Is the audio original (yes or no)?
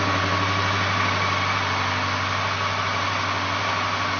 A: yes